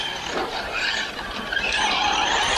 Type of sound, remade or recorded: recorded